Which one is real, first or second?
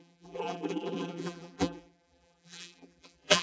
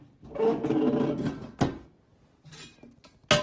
second